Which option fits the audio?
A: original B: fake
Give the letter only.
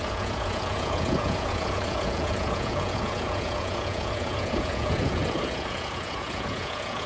B